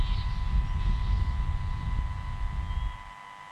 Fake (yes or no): no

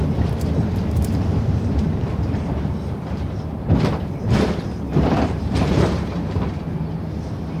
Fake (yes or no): yes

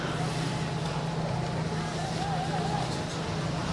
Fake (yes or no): no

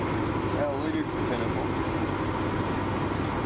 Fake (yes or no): no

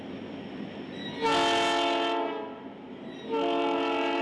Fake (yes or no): no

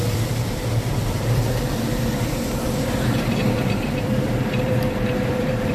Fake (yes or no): yes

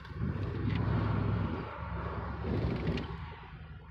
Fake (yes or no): yes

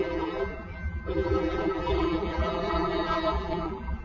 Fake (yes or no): yes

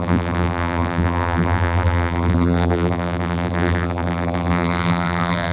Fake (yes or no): yes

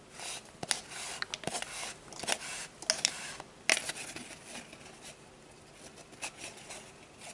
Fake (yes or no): no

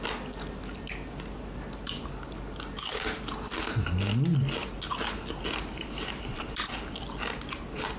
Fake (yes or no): no